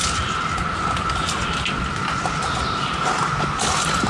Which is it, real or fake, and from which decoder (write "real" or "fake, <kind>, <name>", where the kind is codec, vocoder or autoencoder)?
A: real